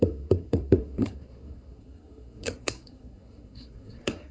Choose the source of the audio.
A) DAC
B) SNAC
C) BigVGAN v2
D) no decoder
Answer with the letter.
B